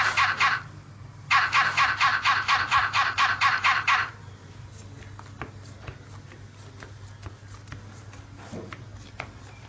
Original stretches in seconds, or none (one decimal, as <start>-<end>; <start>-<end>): 0.0-2.1; 4.7-8.9